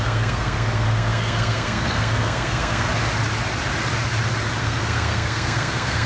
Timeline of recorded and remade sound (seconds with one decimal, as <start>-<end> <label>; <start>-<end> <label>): 0.0-2.9 remade; 2.9-4.6 recorded; 4.6-6.1 remade